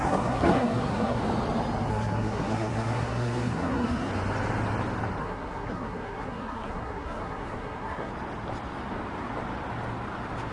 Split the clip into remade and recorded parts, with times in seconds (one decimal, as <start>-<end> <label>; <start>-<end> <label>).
0.0-1.2 remade; 1.2-1.9 recorded; 1.9-4.1 remade; 4.1-5.2 recorded; 5.2-8.1 remade; 8.1-10.5 recorded